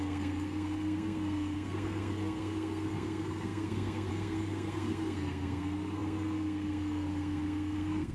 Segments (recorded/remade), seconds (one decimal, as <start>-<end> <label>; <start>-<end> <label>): 0.0-8.1 remade